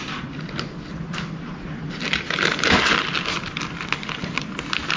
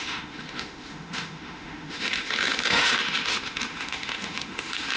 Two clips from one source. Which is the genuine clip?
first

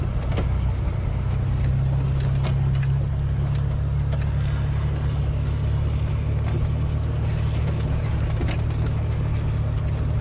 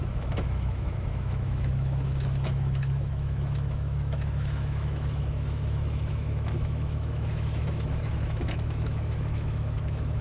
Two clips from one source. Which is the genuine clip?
first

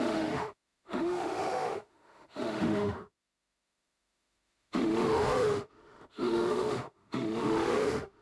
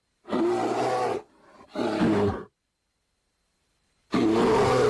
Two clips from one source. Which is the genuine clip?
second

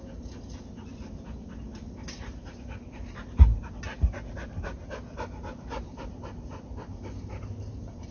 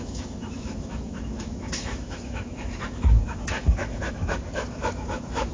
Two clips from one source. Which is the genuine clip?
first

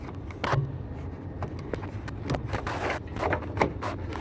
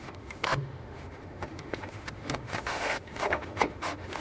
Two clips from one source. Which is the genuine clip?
first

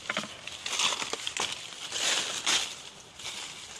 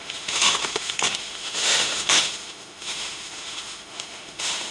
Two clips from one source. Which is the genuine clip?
first